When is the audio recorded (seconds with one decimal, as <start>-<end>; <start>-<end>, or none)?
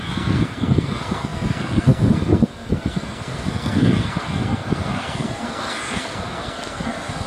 none